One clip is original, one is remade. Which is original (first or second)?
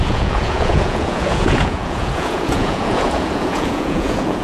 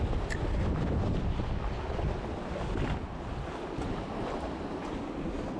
second